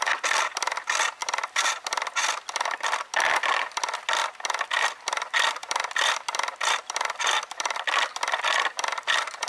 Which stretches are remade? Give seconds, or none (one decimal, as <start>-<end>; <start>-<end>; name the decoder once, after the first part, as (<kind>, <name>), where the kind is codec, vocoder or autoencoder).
1.2-2.2 (vocoder, BigVGAN v2); 4.2-9.5